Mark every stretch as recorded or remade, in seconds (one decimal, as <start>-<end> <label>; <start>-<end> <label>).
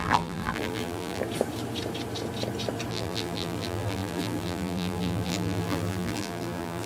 0.0-1.2 remade; 1.2-2.9 recorded; 2.9-6.9 remade